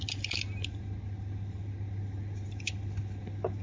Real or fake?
real